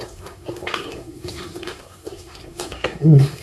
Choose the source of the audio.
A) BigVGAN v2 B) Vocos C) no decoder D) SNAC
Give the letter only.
D